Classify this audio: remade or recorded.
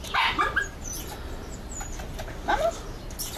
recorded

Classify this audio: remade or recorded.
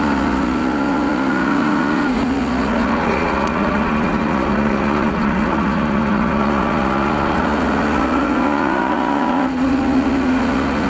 remade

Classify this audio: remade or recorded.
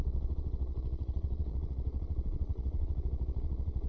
remade